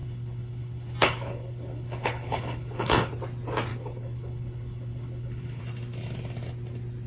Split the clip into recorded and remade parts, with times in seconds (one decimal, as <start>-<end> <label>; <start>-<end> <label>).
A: 0.0-3.1 remade; 3.1-3.7 recorded; 3.7-5.6 remade; 5.6-7.1 recorded